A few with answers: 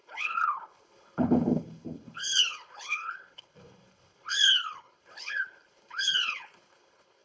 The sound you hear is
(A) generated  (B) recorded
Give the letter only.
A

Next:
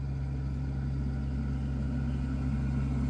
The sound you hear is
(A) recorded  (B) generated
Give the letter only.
A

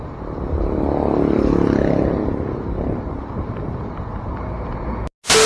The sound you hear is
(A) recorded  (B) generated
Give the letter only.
A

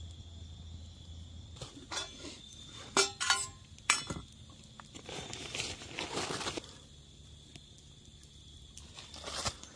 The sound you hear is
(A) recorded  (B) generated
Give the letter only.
A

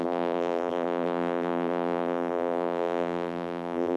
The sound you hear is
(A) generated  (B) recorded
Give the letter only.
A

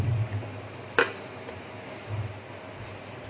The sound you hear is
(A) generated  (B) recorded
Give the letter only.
B